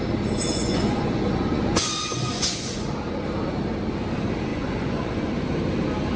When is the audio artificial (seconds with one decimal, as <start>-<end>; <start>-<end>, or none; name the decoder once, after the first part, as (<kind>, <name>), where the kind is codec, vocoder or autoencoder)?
0.5-2.9 (vocoder, Vocos); 4.5-5.3